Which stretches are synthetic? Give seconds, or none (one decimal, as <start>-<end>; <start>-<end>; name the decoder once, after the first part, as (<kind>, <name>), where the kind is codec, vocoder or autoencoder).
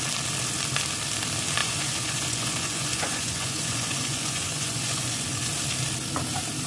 1.6-5.5 (vocoder, Vocos)